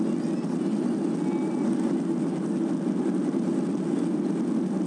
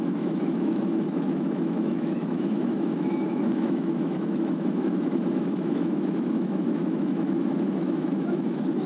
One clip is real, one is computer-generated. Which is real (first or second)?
first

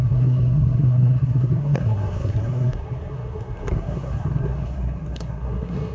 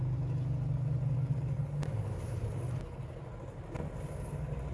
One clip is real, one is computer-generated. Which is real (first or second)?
second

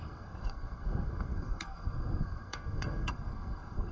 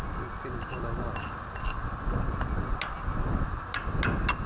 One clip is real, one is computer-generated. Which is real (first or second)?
second